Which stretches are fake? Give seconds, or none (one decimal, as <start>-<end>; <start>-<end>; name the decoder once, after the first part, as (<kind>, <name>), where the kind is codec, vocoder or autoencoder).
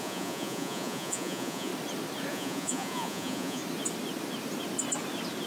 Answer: 0.0-1.7 (vocoder, Vocos); 2.3-3.6